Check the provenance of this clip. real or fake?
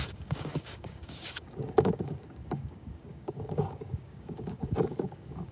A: fake